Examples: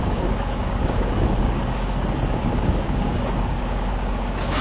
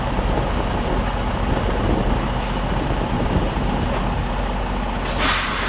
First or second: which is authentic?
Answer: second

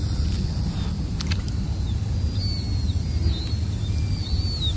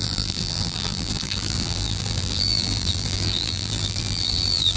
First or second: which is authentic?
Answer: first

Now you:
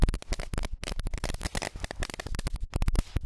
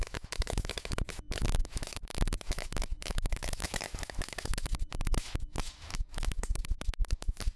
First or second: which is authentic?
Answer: first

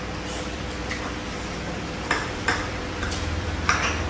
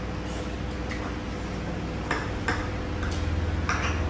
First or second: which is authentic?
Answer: second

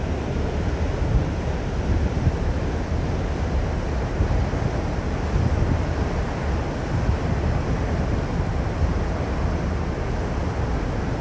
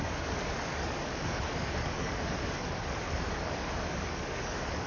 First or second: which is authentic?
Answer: first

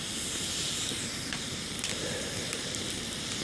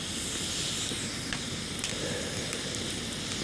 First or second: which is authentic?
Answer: second